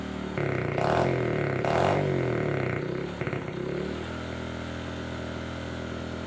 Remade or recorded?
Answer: recorded